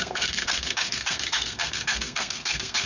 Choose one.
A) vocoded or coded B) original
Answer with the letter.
A